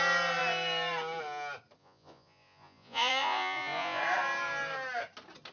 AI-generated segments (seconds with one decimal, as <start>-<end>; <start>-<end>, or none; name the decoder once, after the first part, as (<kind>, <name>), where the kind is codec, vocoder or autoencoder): 1.8-4.0 (vocoder, Vocos)